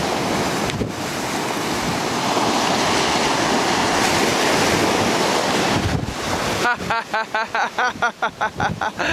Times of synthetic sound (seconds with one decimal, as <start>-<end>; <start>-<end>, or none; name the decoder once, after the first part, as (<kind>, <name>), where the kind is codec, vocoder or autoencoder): none